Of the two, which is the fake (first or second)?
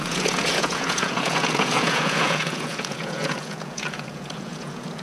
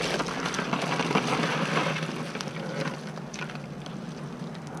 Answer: first